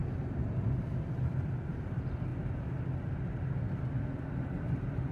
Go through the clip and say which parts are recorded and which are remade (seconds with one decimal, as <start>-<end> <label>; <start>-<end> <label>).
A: 0.0-1.9 remade; 1.9-5.1 recorded